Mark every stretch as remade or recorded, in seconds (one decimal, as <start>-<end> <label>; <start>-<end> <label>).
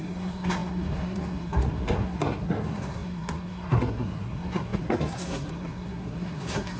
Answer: 0.0-6.8 remade